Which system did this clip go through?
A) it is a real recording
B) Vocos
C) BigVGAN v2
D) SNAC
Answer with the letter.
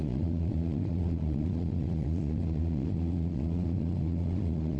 B